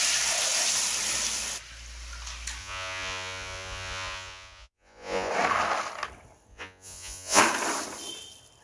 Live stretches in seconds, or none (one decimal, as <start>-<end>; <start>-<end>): 0.0-2.6; 5.3-6.5; 7.4-8.6